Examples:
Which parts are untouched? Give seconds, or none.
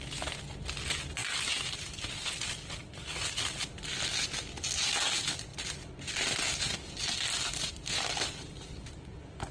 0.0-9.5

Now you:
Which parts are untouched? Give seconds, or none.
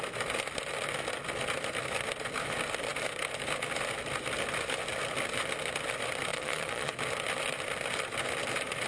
0.0-6.3; 6.9-8.9